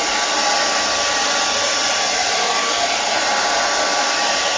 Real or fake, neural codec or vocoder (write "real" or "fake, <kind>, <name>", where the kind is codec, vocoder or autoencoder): real